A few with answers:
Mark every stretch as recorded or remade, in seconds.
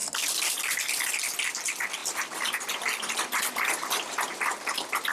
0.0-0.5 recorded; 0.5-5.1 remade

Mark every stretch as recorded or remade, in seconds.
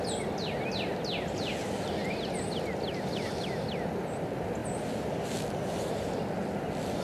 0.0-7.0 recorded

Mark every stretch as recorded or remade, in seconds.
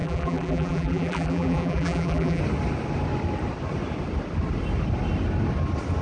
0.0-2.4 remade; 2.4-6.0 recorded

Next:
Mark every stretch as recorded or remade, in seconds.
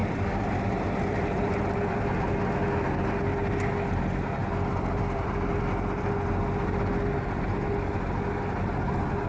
0.0-2.4 remade; 2.4-4.4 recorded; 4.4-5.3 remade; 5.3-9.3 recorded